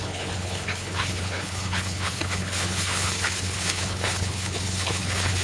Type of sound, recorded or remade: remade